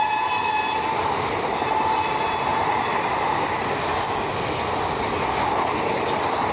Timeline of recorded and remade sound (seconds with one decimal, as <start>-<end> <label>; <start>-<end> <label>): 0.0-6.5 recorded